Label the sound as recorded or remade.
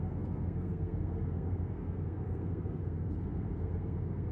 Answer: remade